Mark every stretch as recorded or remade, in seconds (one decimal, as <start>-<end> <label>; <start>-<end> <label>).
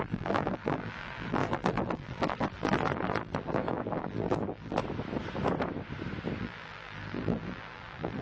0.0-4.8 remade; 4.8-6.4 recorded; 6.4-8.2 remade